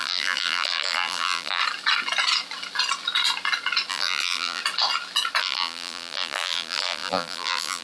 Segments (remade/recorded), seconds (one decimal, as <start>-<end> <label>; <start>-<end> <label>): 0.0-1.6 remade; 1.6-3.9 recorded; 3.9-4.6 remade; 4.6-5.4 recorded; 5.4-7.8 remade